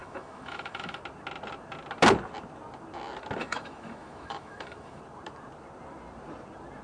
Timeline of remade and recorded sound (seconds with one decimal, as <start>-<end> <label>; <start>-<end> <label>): 0.0-1.0 remade; 1.0-3.4 recorded; 3.4-5.0 remade; 5.0-6.8 recorded